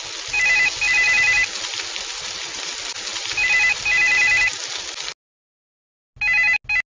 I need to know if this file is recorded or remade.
recorded